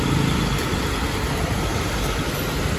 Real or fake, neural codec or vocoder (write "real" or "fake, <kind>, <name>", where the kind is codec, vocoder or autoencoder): real